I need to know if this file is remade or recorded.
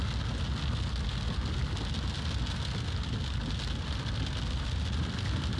recorded